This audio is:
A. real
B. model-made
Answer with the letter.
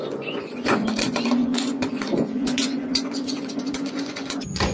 B